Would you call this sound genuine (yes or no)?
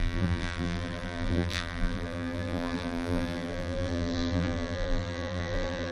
no